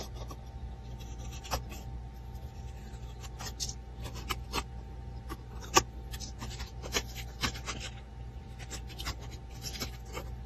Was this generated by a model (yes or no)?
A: no